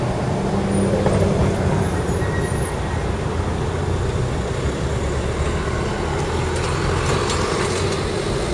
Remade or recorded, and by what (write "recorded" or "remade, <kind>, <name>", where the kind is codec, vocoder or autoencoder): recorded